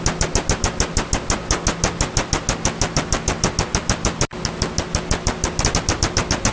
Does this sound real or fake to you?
real